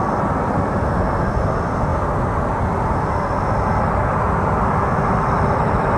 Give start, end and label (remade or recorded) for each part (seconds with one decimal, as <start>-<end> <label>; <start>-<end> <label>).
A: 0.0-6.0 recorded